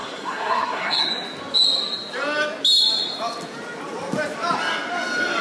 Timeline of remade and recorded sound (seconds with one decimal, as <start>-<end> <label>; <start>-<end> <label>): 0.0-1.1 remade; 1.1-5.4 recorded